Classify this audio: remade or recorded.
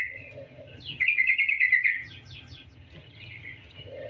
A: remade